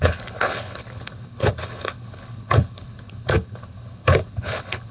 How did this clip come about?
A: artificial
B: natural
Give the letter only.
A